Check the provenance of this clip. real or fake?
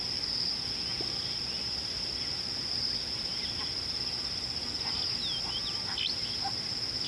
real